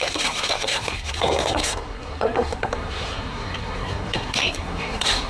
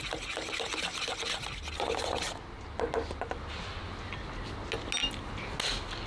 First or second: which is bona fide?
second